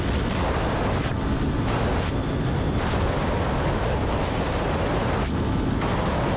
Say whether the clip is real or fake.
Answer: real